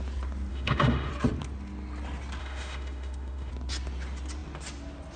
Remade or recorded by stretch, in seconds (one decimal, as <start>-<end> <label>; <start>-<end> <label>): 0.0-0.5 recorded; 0.5-1.1 remade; 1.1-2.4 recorded; 2.4-3.5 remade; 3.5-5.2 recorded